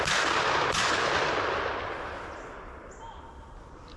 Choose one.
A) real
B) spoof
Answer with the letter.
A